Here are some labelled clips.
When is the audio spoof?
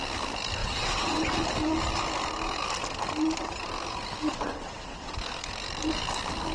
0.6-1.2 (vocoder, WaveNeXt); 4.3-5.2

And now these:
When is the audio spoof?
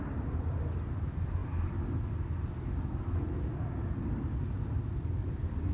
none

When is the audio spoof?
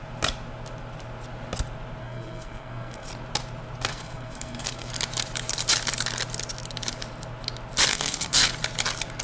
2.0-3.1 (codec, SNAC); 3.9-4.9; 7.9-8.5